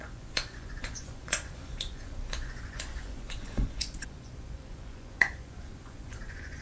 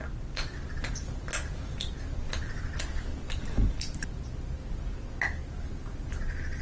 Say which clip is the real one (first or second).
second